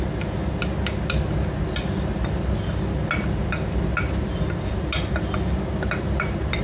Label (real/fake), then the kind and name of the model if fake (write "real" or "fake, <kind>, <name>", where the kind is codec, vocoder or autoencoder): real